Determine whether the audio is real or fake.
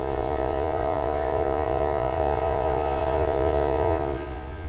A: fake